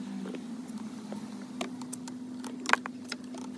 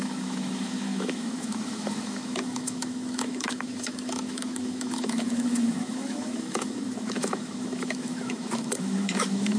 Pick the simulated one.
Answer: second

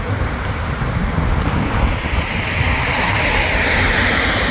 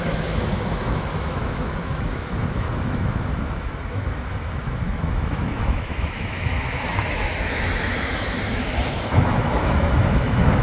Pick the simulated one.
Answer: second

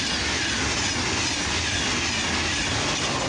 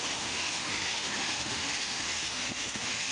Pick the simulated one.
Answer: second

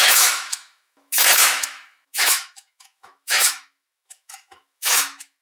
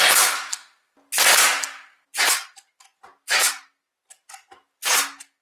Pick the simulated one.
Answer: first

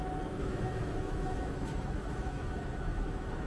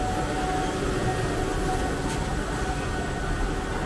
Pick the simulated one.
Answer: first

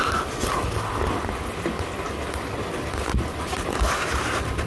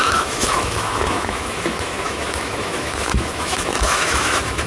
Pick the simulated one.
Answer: second